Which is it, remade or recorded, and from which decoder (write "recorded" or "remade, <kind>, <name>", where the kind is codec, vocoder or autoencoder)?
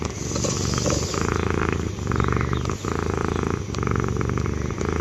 recorded